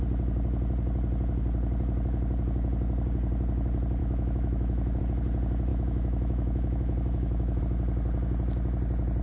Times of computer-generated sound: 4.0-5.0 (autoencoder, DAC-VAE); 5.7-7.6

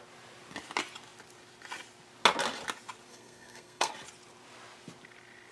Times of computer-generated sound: 3.1-3.9 (codec, SNAC)

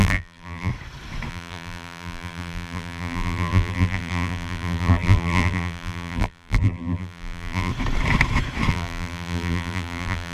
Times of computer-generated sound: 0.0-0.7 (vocoder, BigVGAN v2); 1.3-7.7; 8.7-10.3

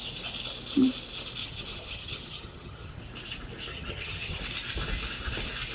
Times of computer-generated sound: 1.4-3.0 (vocoder, HiFi-GAN); 3.7-4.4

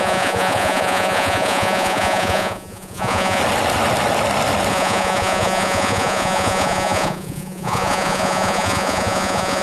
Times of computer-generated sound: 0.0-3.4 (vocoder, Vocos); 4.7-9.6

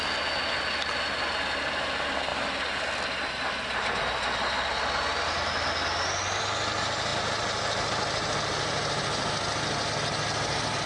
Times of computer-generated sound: none

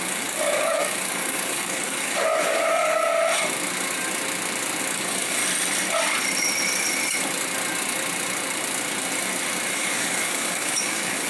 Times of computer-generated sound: 0.0-3.1 (codec, DAC); 4.8-5.4; 9.7-11.3